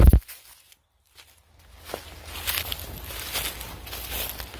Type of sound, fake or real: real